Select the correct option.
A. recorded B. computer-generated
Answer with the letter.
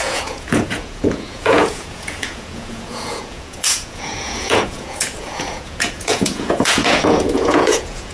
B